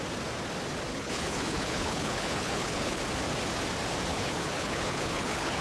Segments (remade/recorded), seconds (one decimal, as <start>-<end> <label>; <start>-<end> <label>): 0.0-0.9 recorded; 0.9-3.0 remade; 3.0-4.1 recorded; 4.1-5.6 remade